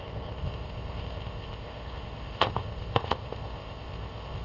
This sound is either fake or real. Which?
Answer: fake